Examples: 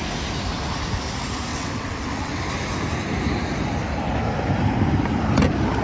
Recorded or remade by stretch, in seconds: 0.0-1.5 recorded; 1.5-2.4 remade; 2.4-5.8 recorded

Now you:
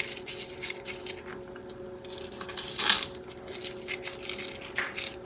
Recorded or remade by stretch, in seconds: 0.0-5.3 recorded

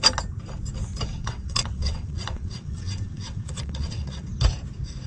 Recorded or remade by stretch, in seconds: 0.0-1.2 recorded; 1.2-4.3 remade; 4.3-5.1 recorded

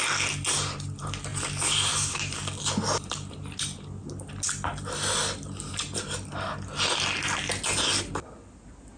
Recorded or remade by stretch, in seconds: 0.0-9.0 recorded

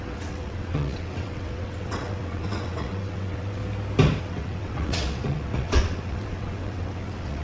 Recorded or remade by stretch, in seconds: 0.0-3.6 remade; 3.6-4.2 recorded; 4.2-7.4 remade

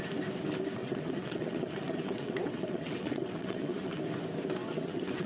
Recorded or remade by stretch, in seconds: 0.0-0.8 recorded; 0.8-4.0 remade; 4.0-4.6 recorded; 4.6-5.3 remade